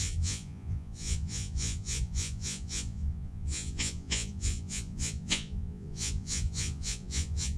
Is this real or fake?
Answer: fake